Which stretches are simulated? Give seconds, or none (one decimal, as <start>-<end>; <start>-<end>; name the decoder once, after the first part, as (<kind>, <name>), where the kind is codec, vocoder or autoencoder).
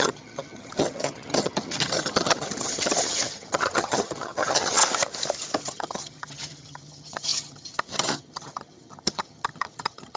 0.0-4.8 (vocoder, HiFi-GAN); 5.6-10.2